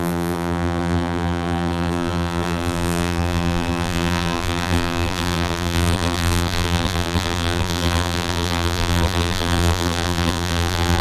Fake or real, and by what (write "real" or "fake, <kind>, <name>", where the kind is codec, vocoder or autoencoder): fake, vocoder, BigVGAN v2